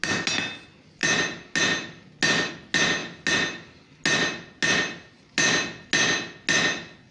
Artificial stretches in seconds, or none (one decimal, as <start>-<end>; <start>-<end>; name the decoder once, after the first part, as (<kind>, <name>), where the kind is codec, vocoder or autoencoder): none